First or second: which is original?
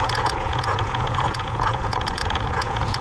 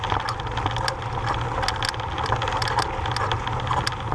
second